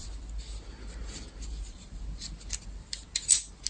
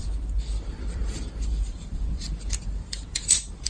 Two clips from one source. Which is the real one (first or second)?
first